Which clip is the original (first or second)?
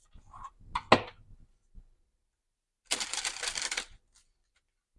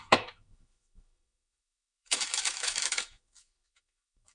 first